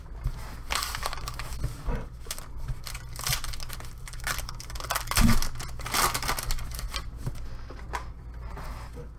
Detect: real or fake real